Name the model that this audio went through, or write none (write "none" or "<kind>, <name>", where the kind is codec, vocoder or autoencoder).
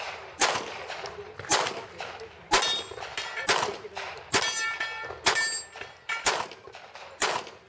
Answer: none